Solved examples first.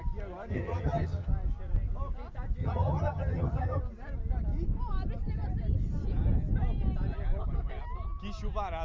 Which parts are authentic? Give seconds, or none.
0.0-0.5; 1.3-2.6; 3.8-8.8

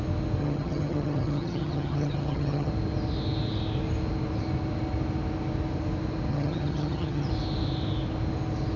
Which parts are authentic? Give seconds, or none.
0.0-0.4; 2.7-6.3; 7.3-8.8

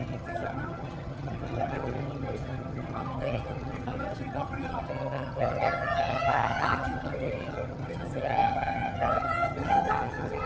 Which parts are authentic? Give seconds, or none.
none